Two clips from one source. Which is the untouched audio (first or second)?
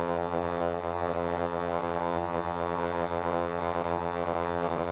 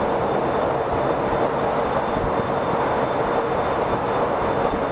second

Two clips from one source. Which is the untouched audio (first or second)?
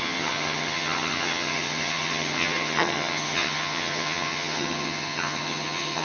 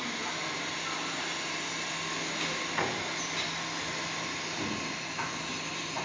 second